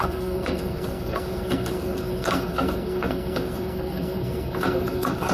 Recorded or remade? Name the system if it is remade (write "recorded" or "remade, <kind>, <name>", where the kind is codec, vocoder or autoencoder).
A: remade, codec, SNAC